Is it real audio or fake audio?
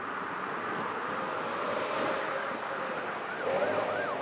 real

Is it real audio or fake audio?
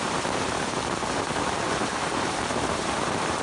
fake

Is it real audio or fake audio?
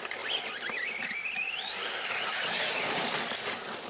real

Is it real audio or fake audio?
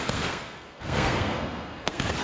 fake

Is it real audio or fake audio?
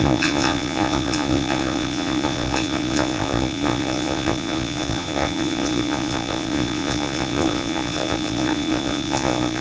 fake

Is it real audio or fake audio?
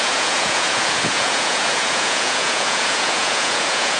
fake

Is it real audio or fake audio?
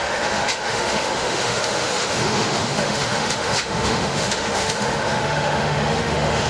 fake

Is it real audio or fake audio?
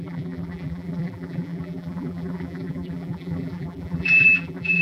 fake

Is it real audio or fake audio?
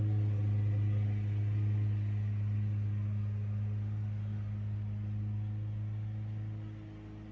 real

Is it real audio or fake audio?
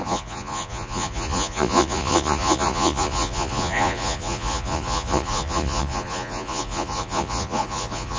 fake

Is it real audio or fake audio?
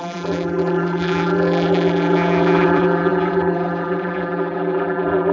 fake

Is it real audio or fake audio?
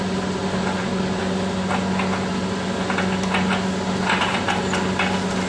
real